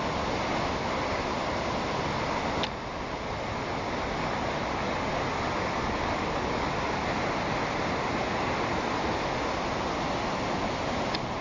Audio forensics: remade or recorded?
recorded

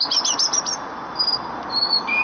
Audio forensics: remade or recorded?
recorded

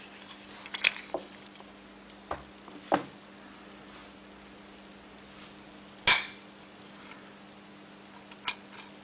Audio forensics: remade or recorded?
recorded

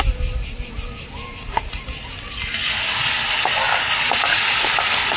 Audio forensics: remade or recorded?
recorded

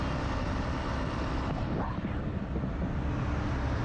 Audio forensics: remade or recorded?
recorded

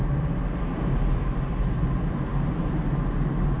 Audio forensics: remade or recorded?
recorded